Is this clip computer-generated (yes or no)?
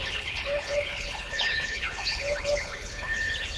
yes